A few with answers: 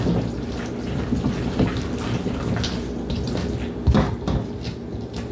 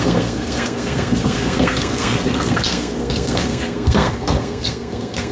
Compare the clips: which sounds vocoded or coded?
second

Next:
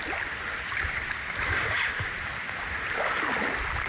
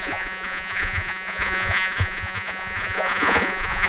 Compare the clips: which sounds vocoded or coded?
second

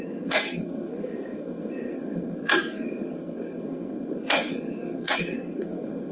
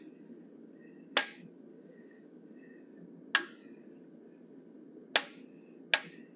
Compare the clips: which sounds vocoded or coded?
first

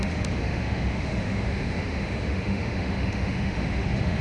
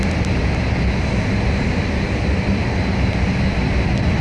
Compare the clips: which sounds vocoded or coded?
first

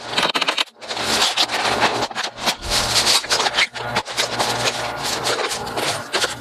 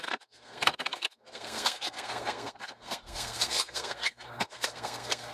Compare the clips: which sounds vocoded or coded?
second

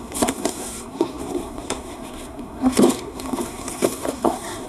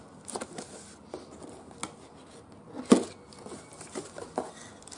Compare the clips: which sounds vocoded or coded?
first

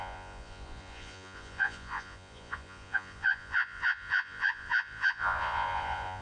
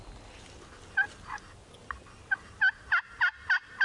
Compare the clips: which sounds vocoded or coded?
first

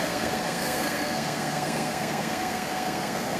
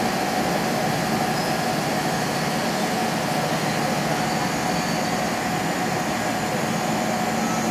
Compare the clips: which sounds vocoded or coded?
first